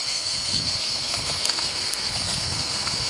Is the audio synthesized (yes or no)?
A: yes